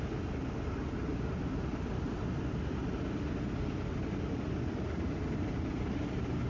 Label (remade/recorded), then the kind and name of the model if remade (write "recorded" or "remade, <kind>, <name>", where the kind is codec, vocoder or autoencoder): recorded